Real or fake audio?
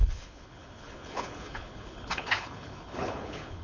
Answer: fake